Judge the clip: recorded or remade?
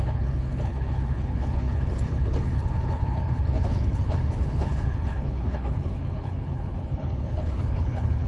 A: remade